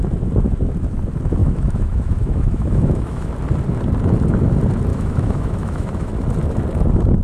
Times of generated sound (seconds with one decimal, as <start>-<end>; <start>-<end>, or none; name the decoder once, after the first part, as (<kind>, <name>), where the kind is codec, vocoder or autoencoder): 1.4-3.3 (autoencoder, DAC-VAE); 4.9-6.1

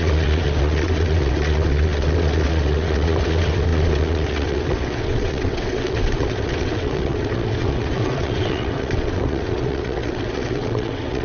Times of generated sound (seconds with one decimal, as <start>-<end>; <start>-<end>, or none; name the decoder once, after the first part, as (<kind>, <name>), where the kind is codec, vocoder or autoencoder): 0.0-11.2 (vocoder, WaveNeXt)

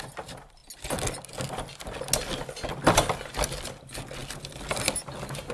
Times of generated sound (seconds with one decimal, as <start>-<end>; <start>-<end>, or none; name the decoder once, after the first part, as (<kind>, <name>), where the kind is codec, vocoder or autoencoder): none